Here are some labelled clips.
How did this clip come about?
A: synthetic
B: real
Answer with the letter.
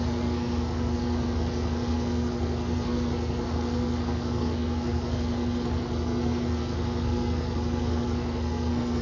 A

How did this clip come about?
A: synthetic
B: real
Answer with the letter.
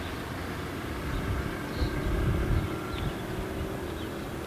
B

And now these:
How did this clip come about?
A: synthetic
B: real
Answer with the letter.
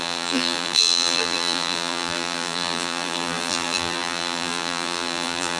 A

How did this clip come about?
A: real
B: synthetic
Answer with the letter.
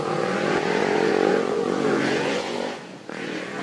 B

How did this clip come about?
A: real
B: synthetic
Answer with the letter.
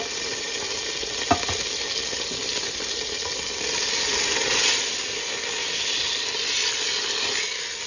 A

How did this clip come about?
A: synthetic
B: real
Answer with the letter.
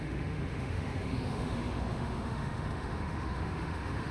A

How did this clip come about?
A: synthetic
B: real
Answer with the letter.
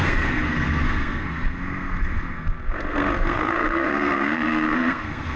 A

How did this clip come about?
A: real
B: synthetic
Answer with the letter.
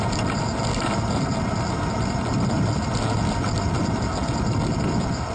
A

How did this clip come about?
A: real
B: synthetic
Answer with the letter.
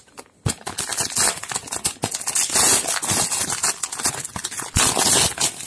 A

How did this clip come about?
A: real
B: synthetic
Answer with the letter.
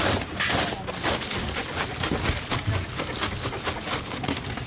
A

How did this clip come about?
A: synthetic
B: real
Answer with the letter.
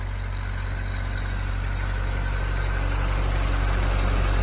B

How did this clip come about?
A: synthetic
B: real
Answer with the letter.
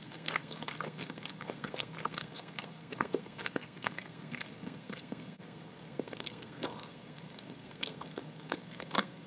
A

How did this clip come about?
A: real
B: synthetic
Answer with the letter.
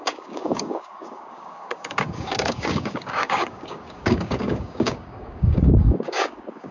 B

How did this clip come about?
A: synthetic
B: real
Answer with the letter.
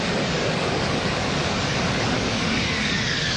A